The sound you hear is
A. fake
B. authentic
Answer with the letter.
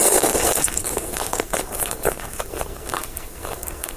A